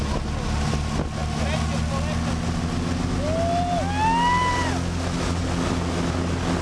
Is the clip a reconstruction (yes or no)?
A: no